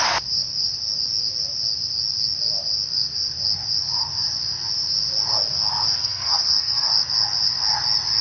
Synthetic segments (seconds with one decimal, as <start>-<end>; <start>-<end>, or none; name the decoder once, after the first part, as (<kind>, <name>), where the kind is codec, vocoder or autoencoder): 6.0-6.9 (codec, SNAC)